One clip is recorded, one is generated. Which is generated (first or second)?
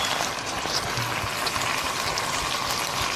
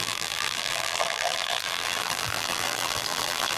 second